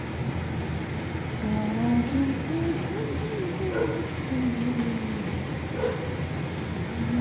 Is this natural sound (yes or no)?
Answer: yes